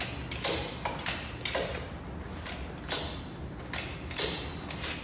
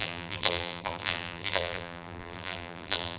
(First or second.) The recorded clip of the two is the first